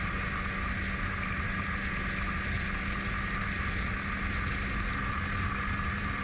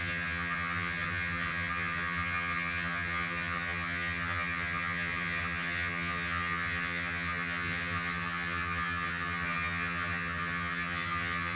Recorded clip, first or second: first